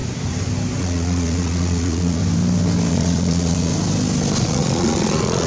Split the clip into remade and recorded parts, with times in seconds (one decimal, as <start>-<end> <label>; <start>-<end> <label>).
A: 0.0-0.8 recorded; 0.8-2.2 remade; 2.2-2.9 recorded; 2.9-3.7 remade; 3.7-4.4 recorded; 4.4-5.5 remade